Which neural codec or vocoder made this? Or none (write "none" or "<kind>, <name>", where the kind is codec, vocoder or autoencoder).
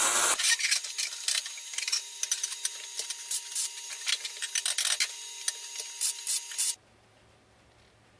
none